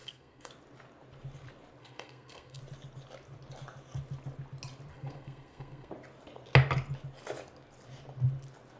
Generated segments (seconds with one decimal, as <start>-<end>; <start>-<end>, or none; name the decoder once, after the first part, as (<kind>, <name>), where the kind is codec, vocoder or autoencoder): 0.0-0.5 (codec, SNAC); 1.8-2.6; 4.9-5.9